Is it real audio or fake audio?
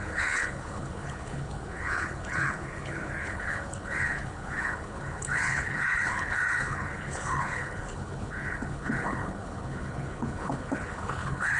fake